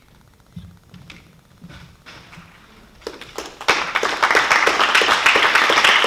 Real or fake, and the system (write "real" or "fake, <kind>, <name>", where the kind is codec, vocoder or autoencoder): real